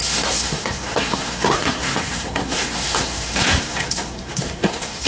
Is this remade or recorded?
remade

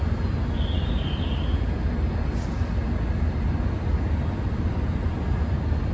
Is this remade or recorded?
recorded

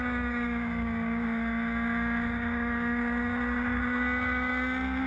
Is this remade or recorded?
remade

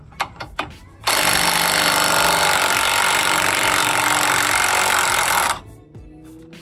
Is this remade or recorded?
recorded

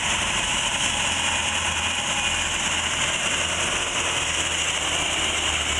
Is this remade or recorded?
recorded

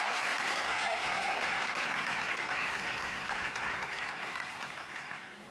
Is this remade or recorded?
remade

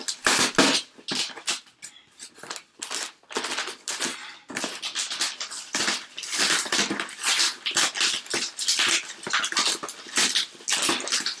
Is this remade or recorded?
recorded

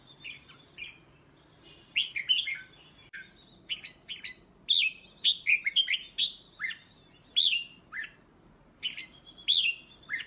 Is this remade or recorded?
recorded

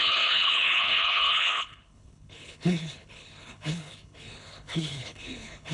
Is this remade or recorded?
remade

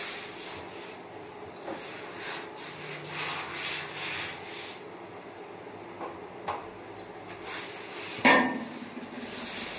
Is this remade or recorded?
recorded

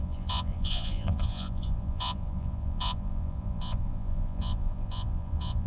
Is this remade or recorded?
remade